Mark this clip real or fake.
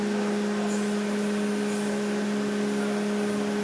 real